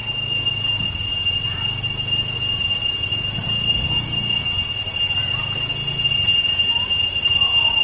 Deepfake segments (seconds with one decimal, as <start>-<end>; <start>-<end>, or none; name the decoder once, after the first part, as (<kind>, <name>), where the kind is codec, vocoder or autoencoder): none